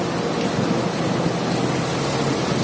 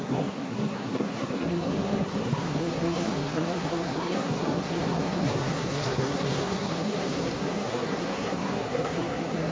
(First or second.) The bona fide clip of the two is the first